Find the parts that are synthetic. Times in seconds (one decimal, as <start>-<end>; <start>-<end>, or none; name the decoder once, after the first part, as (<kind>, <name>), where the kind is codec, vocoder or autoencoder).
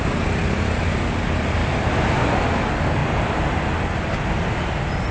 1.6-2.3 (vocoder, BigVGAN v2)